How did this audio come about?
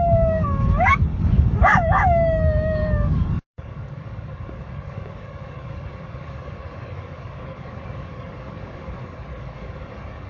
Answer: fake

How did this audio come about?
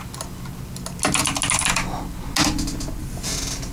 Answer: real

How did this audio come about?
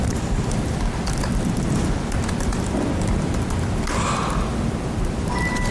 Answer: real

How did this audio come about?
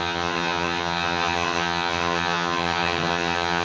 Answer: fake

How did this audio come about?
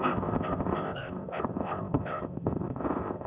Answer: fake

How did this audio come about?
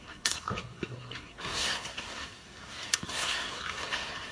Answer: fake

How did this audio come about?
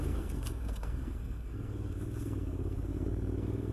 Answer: fake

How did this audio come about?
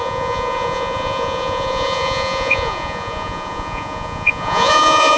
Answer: fake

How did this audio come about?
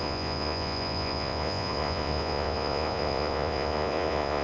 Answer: fake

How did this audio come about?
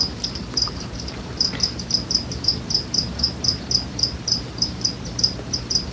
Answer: fake